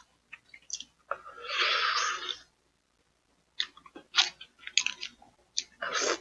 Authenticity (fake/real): real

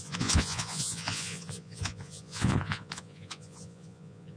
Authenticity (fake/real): fake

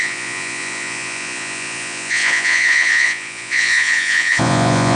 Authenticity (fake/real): fake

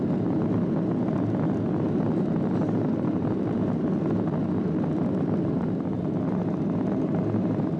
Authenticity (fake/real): real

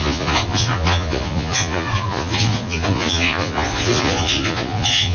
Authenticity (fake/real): fake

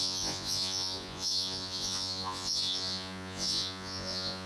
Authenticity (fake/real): fake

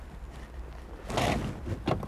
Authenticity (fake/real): real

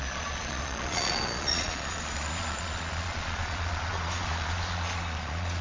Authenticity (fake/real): fake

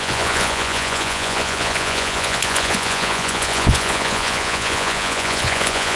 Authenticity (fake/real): fake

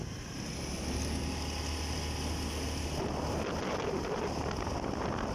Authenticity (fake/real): real